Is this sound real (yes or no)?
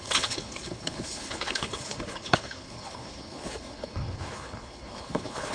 no